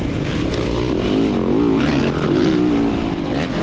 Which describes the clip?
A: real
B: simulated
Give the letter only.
A